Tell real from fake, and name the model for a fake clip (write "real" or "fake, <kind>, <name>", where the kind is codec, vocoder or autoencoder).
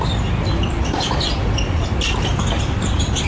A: real